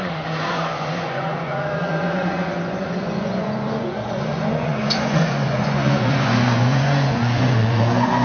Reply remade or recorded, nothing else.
remade